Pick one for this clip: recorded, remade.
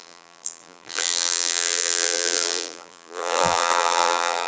remade